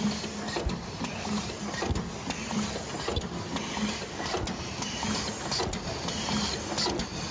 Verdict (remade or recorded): recorded